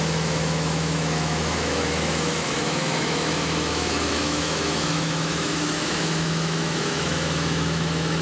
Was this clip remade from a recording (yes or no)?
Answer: yes